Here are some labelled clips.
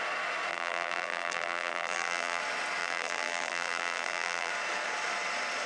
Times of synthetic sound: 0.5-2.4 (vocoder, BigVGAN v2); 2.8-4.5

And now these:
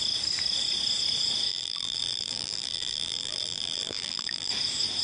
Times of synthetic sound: 1.5-4.5 (vocoder, BigVGAN v2)